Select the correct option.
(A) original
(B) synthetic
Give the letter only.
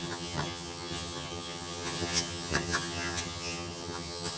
B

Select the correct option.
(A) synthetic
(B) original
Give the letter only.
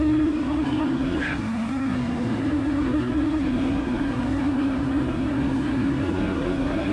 A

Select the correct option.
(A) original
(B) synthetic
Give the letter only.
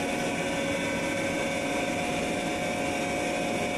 A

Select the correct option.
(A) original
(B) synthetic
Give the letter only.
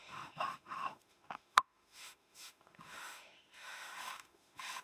B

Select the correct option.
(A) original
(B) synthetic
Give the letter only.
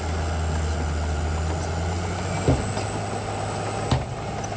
A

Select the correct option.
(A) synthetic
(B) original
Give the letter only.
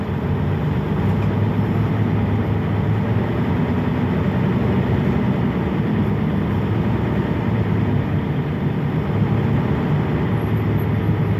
B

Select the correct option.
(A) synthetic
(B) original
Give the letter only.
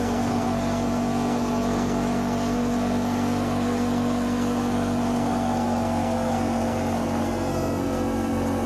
A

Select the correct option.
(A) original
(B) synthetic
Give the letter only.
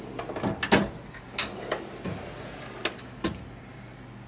A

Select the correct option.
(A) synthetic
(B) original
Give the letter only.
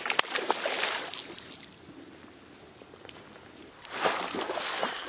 B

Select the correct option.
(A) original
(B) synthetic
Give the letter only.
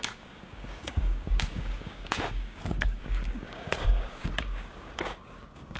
B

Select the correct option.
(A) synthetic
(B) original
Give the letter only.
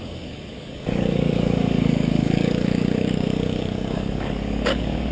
A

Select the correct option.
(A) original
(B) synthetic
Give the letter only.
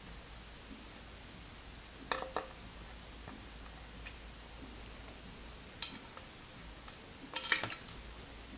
A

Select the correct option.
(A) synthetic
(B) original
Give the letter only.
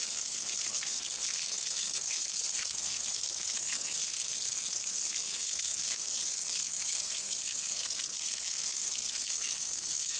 A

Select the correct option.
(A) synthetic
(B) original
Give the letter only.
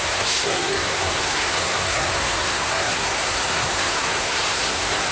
A